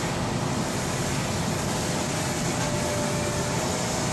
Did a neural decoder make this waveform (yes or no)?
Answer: no